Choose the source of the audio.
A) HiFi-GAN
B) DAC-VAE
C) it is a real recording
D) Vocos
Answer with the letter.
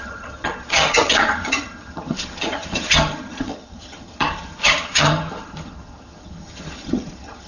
A